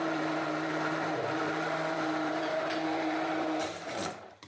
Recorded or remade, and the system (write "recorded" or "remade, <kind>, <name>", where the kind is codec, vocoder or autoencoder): remade, vocoder, BigVGAN v2